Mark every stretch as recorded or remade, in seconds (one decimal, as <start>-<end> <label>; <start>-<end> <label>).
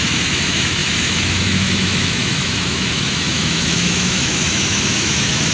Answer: 0.0-5.5 remade